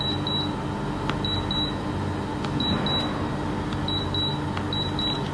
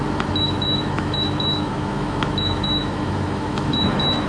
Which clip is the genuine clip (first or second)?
first